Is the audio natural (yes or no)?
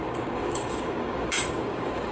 no